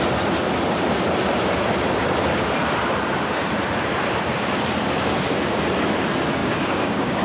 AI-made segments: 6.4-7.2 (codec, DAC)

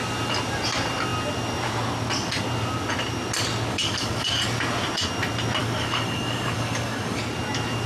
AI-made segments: 3.7-4.3 (codec, DAC); 5.6-7.2

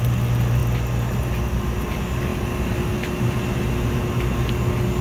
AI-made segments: none

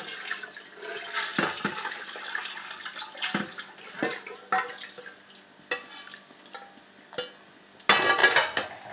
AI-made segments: none

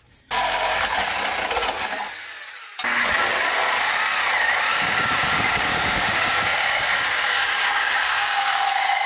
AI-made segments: 4.7-9.1 (codec, DAC)

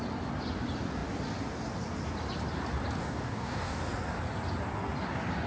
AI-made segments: 3.0-3.8 (codec, DAC)

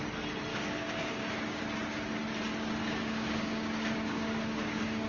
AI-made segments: 0.5-1.6 (codec, DAC); 2.8-5.1

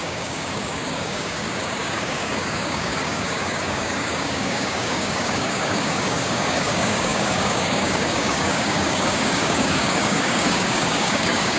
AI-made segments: 0.0-11.6 (codec, DAC)